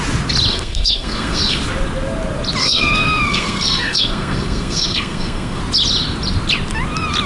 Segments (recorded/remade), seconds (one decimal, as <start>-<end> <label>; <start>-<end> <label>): 0.0-0.5 recorded; 0.5-1.6 remade; 1.6-2.6 recorded; 2.6-5.6 remade; 5.6-7.3 recorded